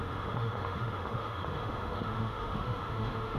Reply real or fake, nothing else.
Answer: fake